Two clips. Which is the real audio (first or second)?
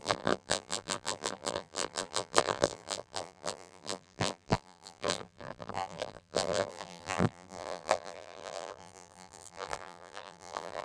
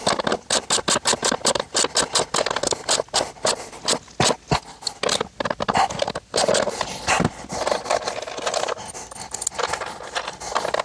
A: second